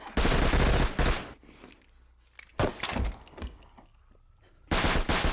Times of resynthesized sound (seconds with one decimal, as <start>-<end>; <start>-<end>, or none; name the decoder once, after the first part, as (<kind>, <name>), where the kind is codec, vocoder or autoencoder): none